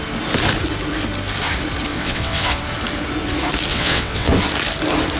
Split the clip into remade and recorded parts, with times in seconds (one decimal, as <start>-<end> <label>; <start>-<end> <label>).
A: 0.0-1.9 recorded; 1.9-2.6 remade; 2.6-3.7 recorded; 3.7-4.3 remade; 4.3-5.2 recorded